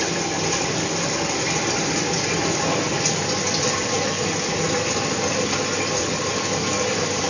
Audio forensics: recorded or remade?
recorded